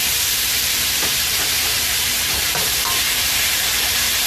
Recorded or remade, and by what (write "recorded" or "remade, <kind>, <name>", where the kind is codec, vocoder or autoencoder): remade, vocoder, BigVGAN v2